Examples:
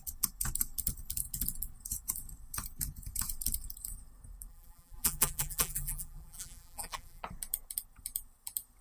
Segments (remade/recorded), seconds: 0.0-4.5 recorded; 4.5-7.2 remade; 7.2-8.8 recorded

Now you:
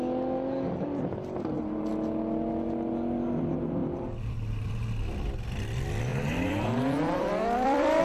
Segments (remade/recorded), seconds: 0.0-3.8 recorded; 3.8-4.7 remade; 4.7-6.1 recorded; 6.1-8.0 remade